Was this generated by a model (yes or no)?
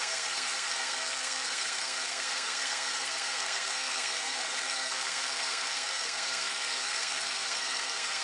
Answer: yes